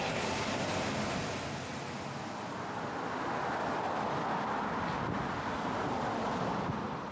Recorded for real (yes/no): yes